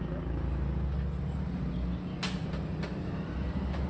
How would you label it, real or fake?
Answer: real